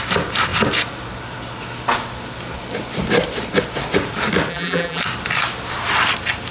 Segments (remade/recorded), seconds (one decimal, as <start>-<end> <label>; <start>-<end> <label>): 0.0-4.5 recorded; 4.5-5.0 remade; 5.0-6.5 recorded

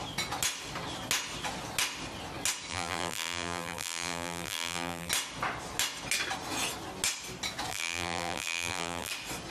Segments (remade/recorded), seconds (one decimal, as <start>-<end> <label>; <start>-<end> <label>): 0.0-2.7 recorded; 2.7-5.1 remade; 5.1-7.7 recorded; 7.7-9.1 remade; 9.1-9.5 recorded

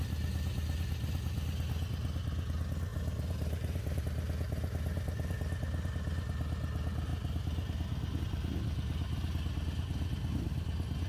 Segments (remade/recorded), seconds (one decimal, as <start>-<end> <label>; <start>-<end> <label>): 0.0-2.9 recorded; 2.9-4.0 remade; 4.0-11.1 recorded

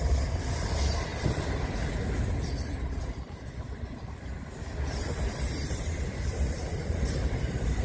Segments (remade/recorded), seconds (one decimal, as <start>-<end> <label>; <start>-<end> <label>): 0.0-7.8 remade